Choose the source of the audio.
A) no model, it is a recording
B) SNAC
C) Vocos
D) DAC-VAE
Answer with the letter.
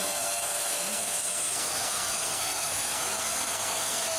B